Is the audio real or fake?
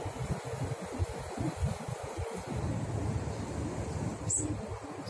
real